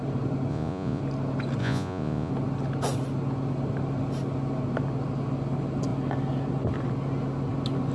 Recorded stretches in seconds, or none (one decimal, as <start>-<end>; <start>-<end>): 0.0-0.5; 1.0-1.6; 2.3-7.9